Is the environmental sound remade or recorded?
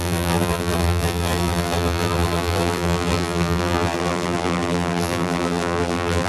remade